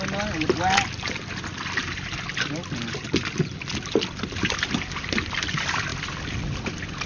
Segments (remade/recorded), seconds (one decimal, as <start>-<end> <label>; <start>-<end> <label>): 0.0-5.9 recorded; 5.9-6.6 remade; 6.6-7.1 recorded